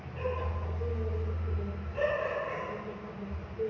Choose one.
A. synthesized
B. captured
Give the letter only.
B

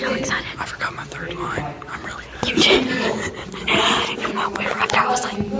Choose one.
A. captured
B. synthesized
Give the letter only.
A